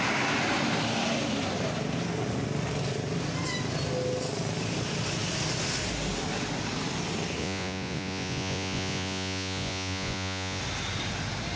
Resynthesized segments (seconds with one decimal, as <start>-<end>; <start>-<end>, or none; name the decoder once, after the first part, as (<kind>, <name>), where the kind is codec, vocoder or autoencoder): 7.4-10.6 (vocoder, Vocos)